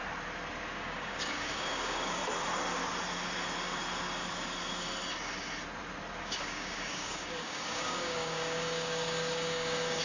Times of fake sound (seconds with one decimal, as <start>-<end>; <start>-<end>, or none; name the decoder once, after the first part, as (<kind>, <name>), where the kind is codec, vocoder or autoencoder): 0.8-2.2 (codec, DAC); 6.2-10.0